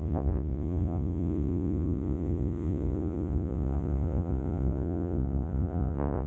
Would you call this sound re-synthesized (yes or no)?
yes